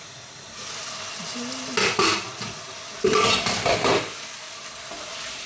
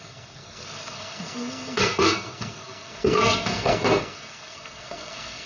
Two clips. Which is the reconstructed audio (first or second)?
second